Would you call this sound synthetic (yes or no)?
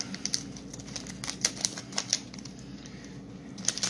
no